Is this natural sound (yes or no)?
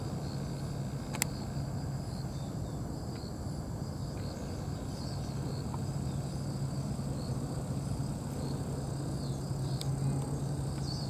yes